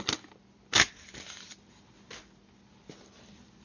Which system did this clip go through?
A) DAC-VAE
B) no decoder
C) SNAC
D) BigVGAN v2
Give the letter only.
B